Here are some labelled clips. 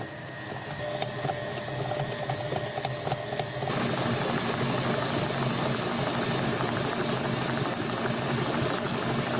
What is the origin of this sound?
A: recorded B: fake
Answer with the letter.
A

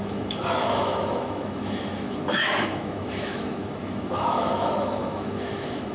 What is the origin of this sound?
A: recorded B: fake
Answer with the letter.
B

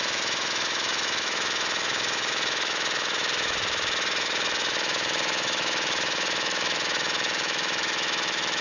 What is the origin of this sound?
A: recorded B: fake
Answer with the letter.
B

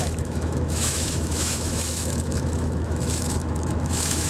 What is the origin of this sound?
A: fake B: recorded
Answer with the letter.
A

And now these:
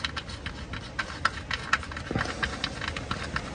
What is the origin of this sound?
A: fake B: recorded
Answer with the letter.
B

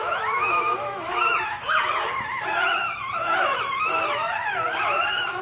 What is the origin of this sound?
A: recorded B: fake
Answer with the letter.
B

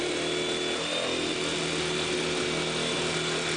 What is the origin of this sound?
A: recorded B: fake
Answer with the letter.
A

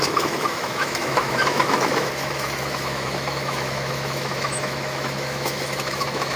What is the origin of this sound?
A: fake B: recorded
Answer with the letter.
A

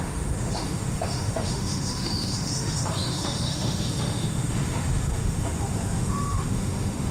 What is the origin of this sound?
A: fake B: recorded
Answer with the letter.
A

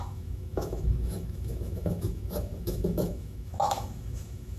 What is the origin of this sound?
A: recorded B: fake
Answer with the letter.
B